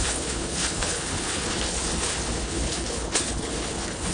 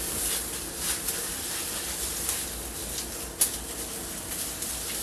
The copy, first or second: first